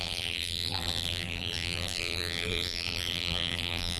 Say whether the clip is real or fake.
fake